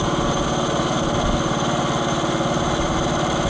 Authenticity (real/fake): real